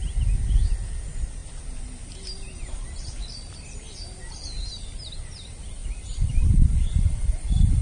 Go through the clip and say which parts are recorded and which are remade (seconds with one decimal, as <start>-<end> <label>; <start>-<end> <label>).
0.0-5.8 recorded; 5.8-7.8 remade